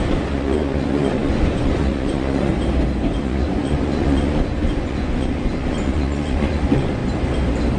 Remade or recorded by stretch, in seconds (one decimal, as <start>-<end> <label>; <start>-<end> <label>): 0.0-2.5 remade; 2.5-3.2 recorded; 3.2-7.0 remade; 7.0-7.8 recorded